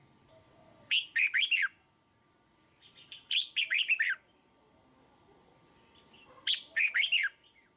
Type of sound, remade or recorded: recorded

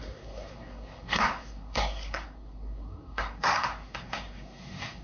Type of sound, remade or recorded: remade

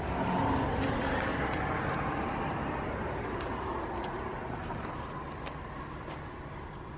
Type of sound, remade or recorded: recorded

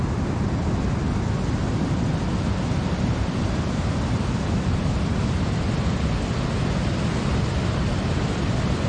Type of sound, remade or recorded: recorded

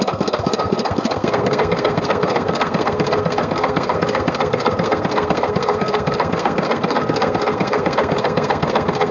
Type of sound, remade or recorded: remade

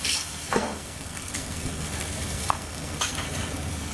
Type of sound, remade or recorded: remade